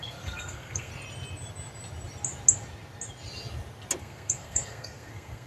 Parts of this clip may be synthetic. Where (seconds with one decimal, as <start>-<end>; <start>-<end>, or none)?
0.0-0.9; 4.0-5.5